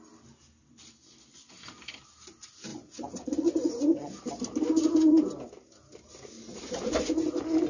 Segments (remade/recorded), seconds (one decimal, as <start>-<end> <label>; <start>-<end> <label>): 0.0-2.7 recorded; 2.7-4.2 remade; 4.2-7.7 recorded